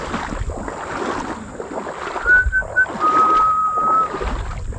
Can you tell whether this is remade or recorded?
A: recorded